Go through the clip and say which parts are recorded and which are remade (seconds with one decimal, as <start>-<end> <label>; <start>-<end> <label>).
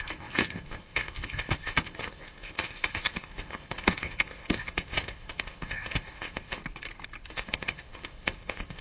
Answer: 0.0-6.6 remade; 6.6-7.3 recorded; 7.3-8.8 remade